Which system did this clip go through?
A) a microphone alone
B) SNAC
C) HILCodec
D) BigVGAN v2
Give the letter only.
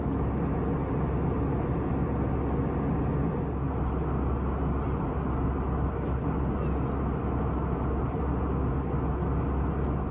A